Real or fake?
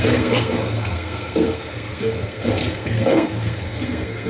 fake